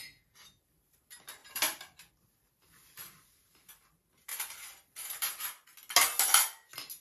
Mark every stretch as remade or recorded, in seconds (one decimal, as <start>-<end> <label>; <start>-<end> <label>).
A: 0.0-1.4 recorded; 1.4-3.5 remade; 3.5-4.3 recorded; 4.3-5.3 remade; 5.3-7.0 recorded

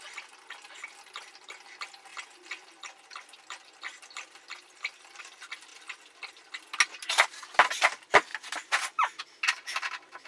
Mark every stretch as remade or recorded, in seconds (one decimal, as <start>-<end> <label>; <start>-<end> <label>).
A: 0.0-2.1 recorded; 2.1-5.2 remade; 5.2-5.7 recorded; 5.7-6.3 remade; 6.3-10.3 recorded

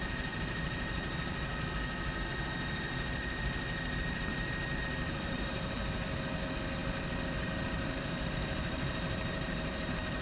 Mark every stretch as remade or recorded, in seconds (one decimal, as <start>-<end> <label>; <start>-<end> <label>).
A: 0.0-1.5 remade; 1.5-4.0 recorded; 4.0-5.8 remade; 5.8-7.4 recorded; 7.4-10.2 remade

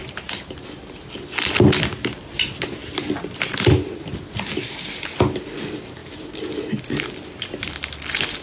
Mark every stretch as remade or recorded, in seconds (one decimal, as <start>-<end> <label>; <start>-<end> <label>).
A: 0.0-0.6 remade; 0.6-8.4 recorded

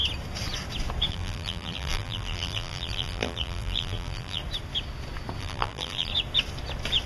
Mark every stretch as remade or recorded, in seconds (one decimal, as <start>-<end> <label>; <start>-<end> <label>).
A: 0.0-1.1 recorded; 1.1-4.4 remade; 4.4-5.4 recorded; 5.4-6.1 remade; 6.1-7.1 recorded